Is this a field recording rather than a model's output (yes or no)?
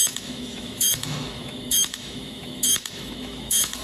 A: no